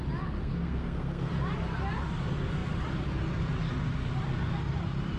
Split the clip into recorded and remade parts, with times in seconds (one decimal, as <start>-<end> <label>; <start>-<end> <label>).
0.0-0.4 recorded; 0.4-1.3 remade; 1.3-5.2 recorded